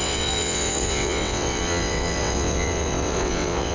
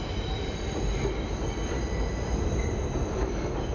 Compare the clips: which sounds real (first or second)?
second